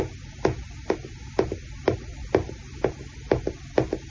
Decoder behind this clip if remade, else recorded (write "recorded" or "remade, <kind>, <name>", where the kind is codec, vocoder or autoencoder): recorded